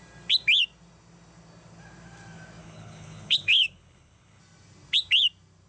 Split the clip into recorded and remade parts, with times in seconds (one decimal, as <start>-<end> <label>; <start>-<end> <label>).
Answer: 0.0-2.6 recorded; 2.6-4.4 remade; 4.4-5.7 recorded